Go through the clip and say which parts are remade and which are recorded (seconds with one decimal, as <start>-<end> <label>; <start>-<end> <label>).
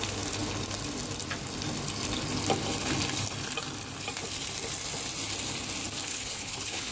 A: 0.0-6.1 recorded; 6.1-6.9 remade